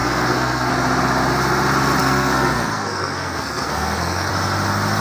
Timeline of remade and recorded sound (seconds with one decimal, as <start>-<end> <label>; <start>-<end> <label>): 0.0-0.7 remade; 0.7-2.0 recorded; 2.0-4.3 remade; 4.3-5.0 recorded